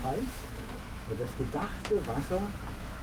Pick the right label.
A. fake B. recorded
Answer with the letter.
A